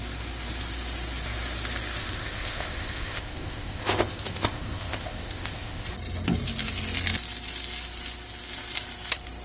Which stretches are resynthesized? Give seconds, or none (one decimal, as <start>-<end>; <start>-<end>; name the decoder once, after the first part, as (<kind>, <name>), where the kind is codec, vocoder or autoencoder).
2.0-5.9 (codec, ZipCodec)